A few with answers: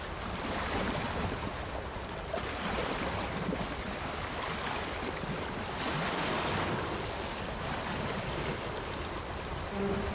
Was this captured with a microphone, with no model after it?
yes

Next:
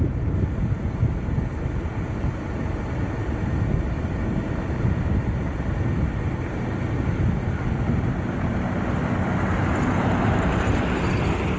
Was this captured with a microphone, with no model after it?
yes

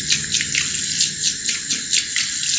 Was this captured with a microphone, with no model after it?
yes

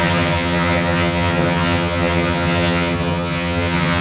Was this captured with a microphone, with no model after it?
no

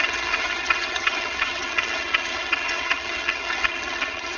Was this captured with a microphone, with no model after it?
no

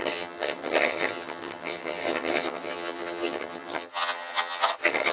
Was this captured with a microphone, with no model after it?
no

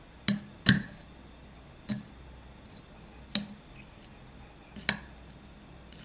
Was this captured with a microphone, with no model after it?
yes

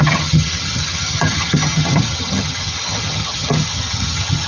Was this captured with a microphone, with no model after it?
no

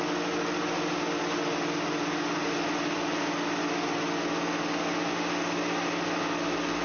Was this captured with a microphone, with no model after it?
yes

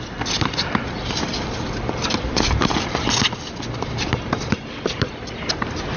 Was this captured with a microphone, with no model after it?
yes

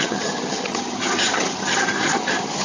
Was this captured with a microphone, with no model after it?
no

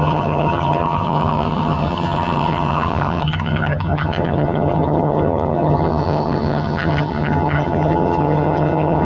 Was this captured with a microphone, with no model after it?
no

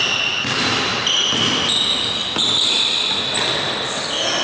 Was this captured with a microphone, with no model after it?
yes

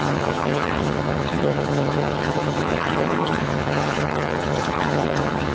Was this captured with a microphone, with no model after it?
no